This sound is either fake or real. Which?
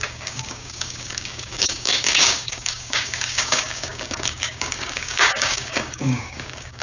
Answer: fake